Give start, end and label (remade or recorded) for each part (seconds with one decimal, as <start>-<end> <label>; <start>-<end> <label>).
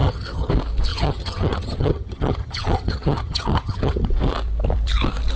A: 0.0-0.5 remade; 0.5-0.9 recorded; 0.9-4.1 remade; 4.1-5.4 recorded